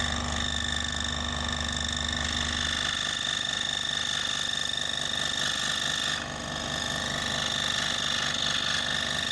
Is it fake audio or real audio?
real